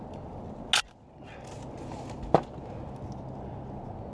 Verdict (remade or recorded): recorded